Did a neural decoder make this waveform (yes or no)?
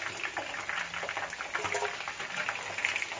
no